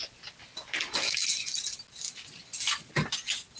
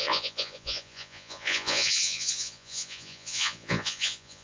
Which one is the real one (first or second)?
first